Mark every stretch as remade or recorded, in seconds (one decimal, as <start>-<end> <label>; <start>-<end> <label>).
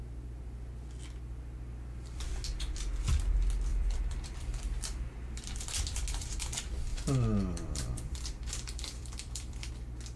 0.0-3.7 recorded; 3.7-4.6 remade; 4.6-6.9 recorded; 6.9-9.7 remade; 9.7-10.2 recorded